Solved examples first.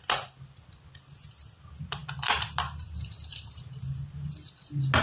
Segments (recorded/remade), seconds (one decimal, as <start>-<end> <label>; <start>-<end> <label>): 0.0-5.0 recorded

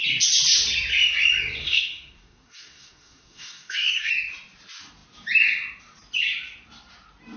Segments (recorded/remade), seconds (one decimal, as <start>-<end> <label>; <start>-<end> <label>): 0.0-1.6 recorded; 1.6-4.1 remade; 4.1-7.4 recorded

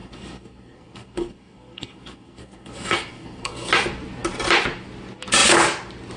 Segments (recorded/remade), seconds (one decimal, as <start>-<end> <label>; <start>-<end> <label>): 0.0-3.7 remade; 3.7-6.2 recorded

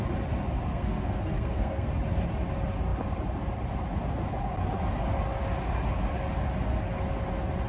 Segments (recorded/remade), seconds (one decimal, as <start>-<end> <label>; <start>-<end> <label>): 0.0-0.7 recorded; 0.7-1.9 remade; 1.9-7.7 recorded